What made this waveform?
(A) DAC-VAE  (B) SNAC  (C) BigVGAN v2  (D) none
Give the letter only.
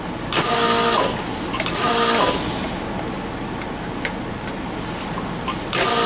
D